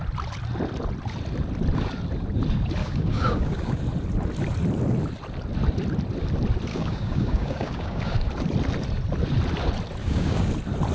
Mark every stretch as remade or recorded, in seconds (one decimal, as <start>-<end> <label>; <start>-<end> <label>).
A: 0.0-2.8 recorded; 2.8-3.8 remade; 3.8-6.7 recorded; 6.7-8.3 remade; 8.3-10.0 recorded; 10.0-10.5 remade; 10.5-10.9 recorded